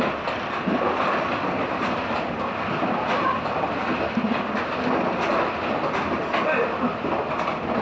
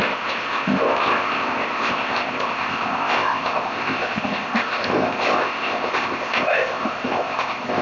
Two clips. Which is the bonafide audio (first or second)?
first